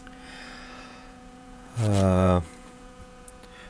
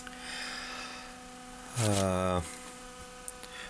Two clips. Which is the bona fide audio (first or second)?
second